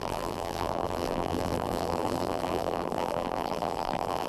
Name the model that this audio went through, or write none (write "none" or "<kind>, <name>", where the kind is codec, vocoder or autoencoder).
vocoder, BigVGAN v2